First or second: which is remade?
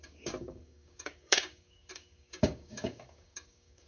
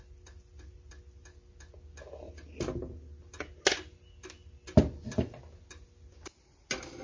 first